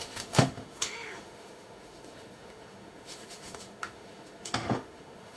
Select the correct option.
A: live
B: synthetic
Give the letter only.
B